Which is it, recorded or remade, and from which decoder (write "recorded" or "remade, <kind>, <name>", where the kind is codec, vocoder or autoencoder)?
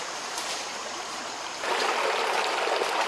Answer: recorded